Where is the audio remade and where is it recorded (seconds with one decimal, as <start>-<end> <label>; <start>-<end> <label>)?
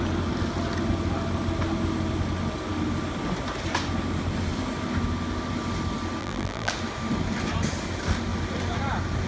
0.0-6.2 recorded; 6.2-6.7 remade; 6.7-9.3 recorded